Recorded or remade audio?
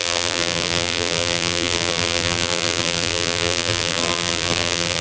remade